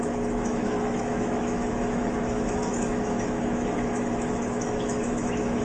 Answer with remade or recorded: remade